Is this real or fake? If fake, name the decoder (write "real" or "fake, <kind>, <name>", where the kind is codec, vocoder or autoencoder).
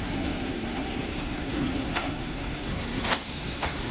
fake, codec, SNAC